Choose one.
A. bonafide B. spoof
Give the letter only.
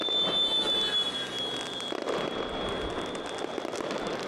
A